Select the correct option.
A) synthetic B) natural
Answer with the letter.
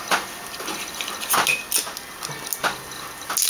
B